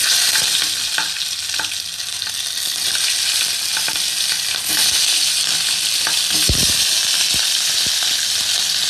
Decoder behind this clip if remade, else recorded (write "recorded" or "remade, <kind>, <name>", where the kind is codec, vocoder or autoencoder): recorded